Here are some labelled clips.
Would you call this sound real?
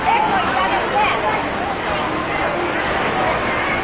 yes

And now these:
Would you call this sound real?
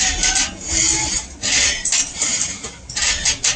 yes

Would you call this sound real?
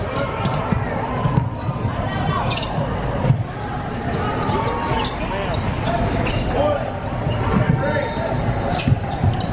yes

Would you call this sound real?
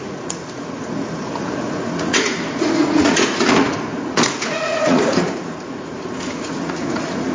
no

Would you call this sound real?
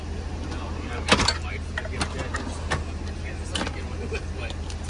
yes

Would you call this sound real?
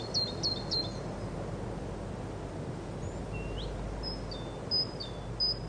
yes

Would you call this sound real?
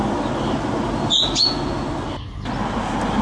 yes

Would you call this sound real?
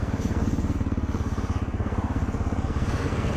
no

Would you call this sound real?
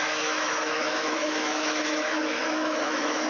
no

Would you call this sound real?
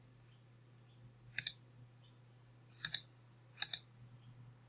yes